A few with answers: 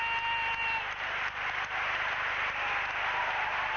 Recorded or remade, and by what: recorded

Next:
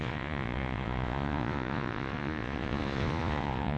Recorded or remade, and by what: remade, vocoder, Vocos